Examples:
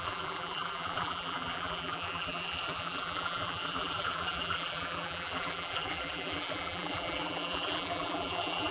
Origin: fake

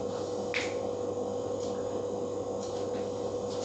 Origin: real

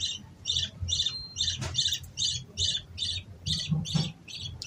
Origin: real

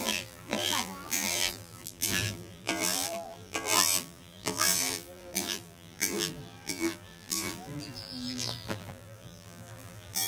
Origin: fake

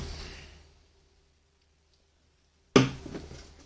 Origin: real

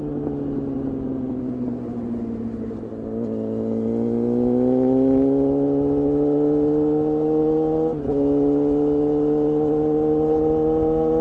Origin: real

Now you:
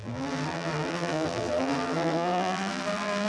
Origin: fake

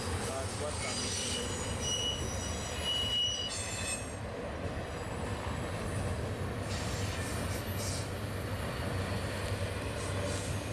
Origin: real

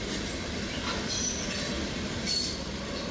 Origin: fake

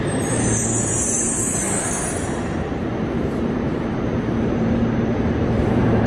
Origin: fake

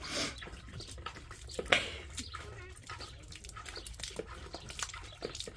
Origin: real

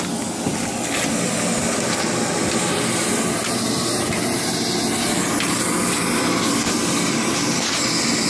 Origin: real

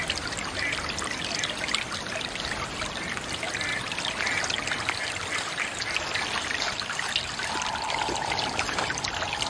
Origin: real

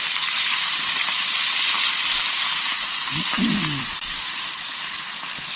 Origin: fake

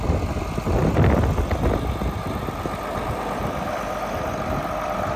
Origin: real